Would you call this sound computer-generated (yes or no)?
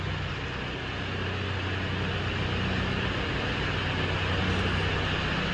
no